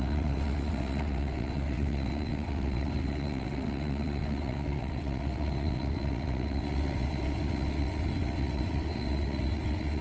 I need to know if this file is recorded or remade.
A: remade